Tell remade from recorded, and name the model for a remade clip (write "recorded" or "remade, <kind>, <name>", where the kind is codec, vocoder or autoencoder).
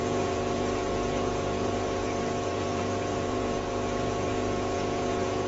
remade, vocoder, Vocos